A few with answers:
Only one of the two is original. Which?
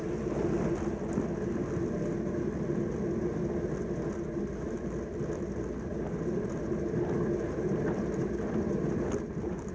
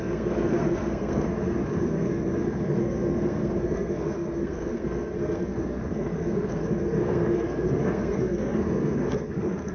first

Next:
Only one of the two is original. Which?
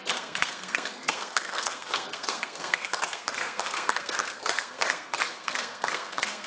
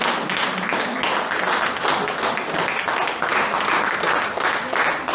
second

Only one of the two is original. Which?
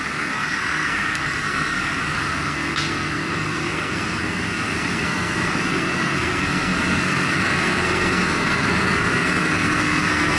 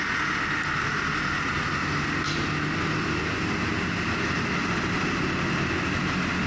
second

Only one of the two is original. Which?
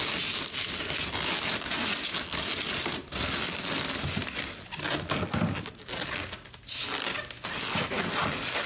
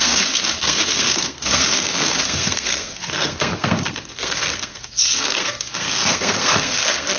first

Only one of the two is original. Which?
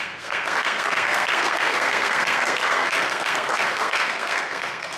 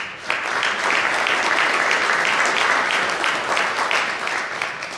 second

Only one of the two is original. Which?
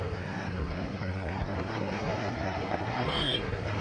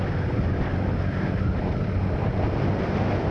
second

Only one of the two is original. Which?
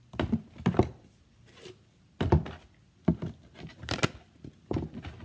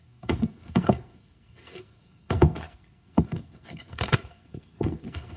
first